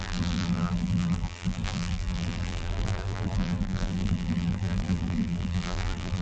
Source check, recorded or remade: remade